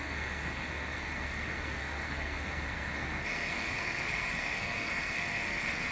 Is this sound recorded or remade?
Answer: remade